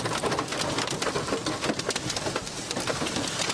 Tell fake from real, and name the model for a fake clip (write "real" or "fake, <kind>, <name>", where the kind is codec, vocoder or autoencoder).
real